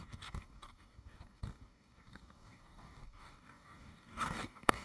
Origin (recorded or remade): remade